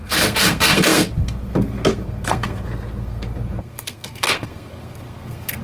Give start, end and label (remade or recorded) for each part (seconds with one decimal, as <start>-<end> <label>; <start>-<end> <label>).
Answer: 0.0-5.6 remade